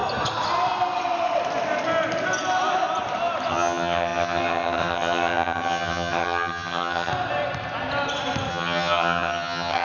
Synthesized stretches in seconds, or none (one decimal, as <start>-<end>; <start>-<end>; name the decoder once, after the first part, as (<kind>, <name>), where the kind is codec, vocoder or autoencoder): 3.5-7.1 (vocoder, HiFi-GAN); 8.5-9.8